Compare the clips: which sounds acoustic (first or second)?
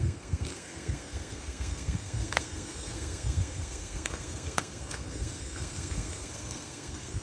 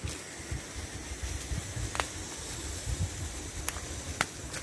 second